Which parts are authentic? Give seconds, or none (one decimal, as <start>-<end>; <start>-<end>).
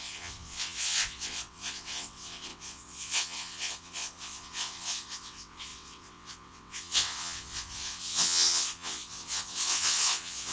none